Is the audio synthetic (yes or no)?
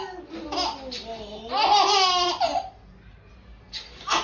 no